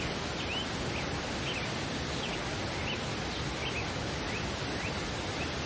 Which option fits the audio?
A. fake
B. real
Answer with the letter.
B